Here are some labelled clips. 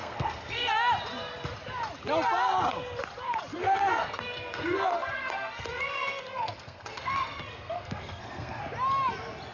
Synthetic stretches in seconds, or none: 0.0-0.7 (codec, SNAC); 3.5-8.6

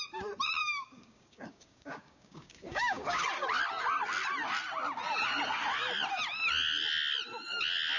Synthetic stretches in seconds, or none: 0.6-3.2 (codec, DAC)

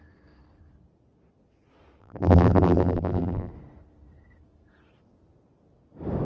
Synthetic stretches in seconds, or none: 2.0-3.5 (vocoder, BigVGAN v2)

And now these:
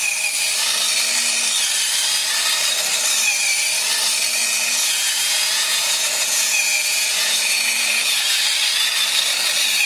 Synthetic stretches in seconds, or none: 4.4-8.4 (vocoder, Vocos)

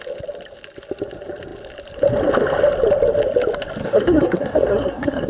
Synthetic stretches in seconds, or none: 3.8-5.3 (codec, SNAC)